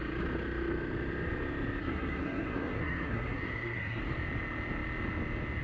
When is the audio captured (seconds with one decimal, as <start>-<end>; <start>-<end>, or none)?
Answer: 0.0-1.8; 4.0-5.6